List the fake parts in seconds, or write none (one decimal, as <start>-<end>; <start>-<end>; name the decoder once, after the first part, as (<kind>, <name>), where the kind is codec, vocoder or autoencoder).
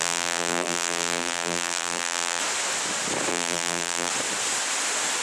0.0-2.4 (vocoder, BigVGAN v2); 3.3-4.1